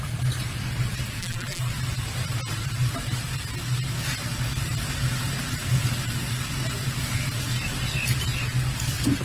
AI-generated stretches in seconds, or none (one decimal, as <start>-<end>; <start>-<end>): 1.2-1.7